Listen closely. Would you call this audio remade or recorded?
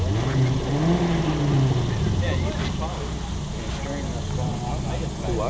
recorded